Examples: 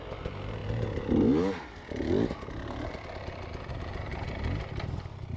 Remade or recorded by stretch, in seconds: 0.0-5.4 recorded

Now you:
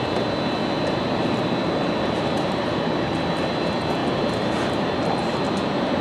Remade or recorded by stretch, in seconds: 0.0-0.6 recorded; 0.6-3.5 remade; 3.5-4.0 recorded; 4.0-6.0 remade

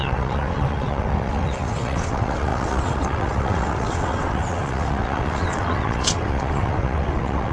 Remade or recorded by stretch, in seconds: 0.0-7.5 remade

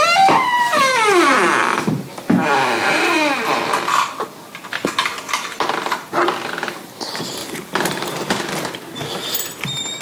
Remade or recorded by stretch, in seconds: 0.0-10.0 recorded

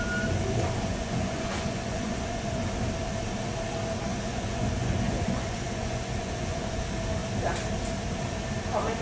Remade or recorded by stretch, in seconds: 0.0-0.9 recorded; 0.9-2.6 remade; 2.6-4.1 recorded; 4.1-6.8 remade; 6.8-9.0 recorded

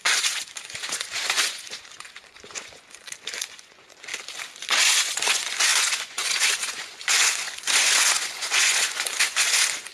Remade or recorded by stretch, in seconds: 0.0-4.1 remade; 4.1-4.6 recorded; 4.6-9.9 remade

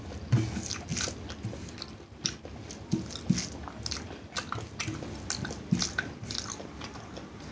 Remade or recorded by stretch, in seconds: 0.0-7.5 recorded

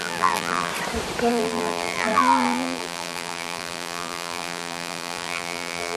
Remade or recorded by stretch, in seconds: 0.0-0.7 remade; 0.7-1.3 recorded; 1.3-6.0 remade